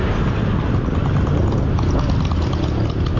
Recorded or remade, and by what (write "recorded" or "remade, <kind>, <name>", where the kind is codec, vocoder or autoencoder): recorded